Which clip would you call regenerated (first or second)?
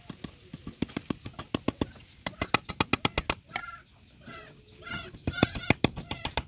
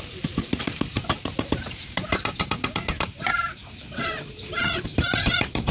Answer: second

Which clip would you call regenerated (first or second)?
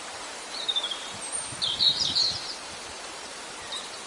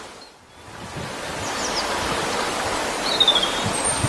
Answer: first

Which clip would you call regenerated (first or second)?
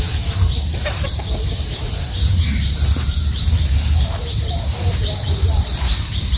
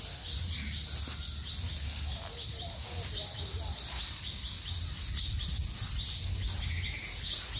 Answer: first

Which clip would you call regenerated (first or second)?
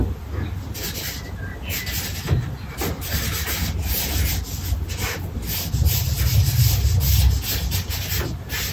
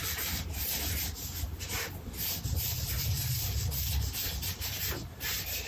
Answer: second